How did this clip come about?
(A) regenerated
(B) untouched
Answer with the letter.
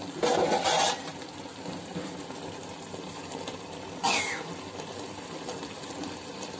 B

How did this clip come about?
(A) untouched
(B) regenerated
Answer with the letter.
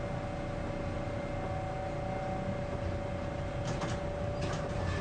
A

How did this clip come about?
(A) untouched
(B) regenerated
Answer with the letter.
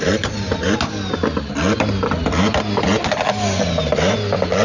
A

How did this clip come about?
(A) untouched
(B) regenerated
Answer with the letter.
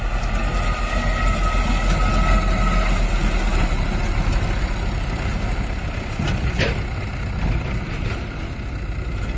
A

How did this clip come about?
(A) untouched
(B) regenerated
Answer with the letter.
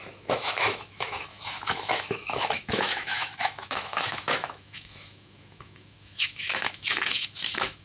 B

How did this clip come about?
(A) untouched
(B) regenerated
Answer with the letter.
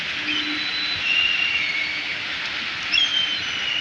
A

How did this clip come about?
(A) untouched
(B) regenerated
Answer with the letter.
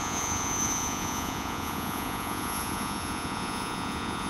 B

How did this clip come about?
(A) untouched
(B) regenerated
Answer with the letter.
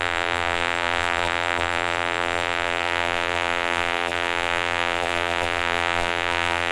B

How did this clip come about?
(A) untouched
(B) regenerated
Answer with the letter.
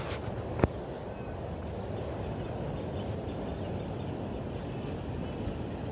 A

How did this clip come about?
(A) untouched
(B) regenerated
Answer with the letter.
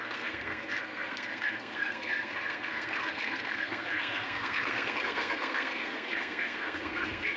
B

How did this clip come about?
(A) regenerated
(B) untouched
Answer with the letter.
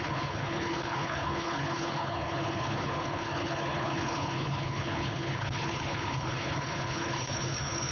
A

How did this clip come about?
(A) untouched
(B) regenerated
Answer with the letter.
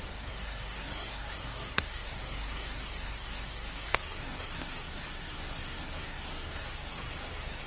B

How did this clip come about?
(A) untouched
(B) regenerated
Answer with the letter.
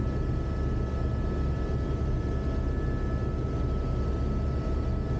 A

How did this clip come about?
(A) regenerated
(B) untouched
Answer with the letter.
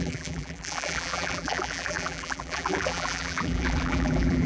A